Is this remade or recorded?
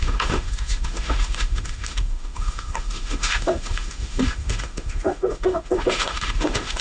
remade